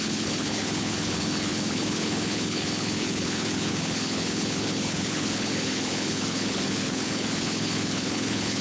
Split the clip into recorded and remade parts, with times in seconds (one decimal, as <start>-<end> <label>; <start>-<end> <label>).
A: 0.0-8.6 remade